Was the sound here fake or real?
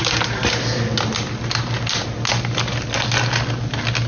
real